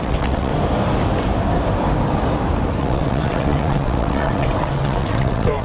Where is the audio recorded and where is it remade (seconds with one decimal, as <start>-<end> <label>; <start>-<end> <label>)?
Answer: 0.0-0.5 remade; 0.5-2.8 recorded; 2.8-5.6 remade